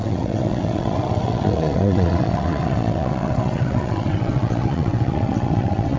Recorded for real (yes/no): no